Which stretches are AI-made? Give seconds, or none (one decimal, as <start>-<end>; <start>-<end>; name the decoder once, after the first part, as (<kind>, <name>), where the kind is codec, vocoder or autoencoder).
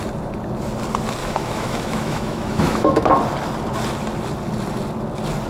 1.2-3.1 (autoencoder, DAC-VAE)